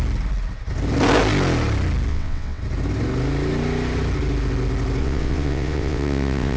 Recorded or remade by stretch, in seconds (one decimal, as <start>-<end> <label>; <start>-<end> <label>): 0.0-2.1 recorded; 2.1-2.6 remade; 2.6-5.0 recorded; 5.0-6.6 remade